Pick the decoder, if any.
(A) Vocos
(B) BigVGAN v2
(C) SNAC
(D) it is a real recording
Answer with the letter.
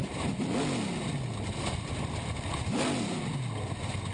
D